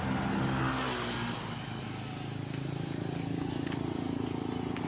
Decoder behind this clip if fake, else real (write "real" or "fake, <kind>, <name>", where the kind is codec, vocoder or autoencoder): real